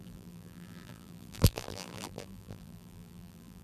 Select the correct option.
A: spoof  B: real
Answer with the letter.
A